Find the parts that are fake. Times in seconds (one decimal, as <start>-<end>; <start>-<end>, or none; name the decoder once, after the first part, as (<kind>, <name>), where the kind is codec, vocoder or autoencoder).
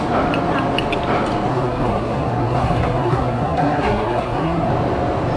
1.5-4.7 (codec, SNAC)